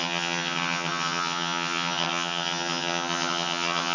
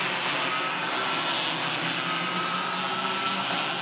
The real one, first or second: second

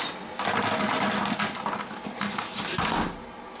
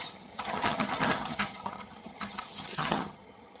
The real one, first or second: first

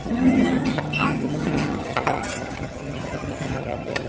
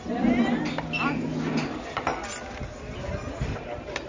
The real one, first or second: second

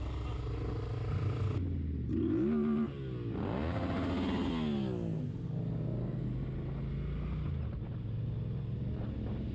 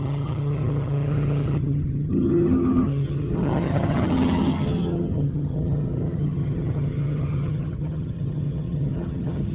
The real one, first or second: first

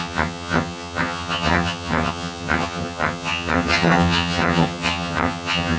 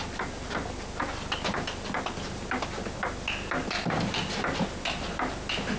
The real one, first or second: second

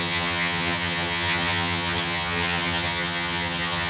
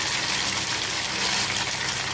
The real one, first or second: second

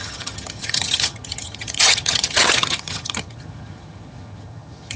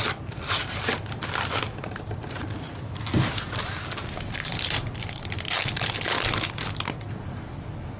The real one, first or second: second